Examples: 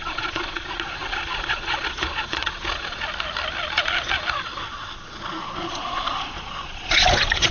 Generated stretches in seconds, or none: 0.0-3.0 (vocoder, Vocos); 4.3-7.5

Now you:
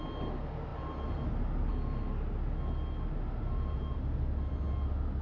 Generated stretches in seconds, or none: none